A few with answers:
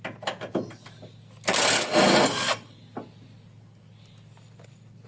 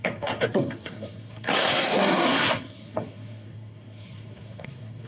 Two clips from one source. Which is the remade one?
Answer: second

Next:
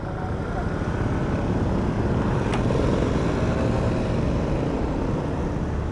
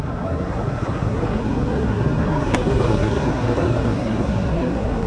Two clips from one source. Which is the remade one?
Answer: second